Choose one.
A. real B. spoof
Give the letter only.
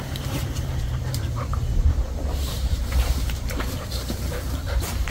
B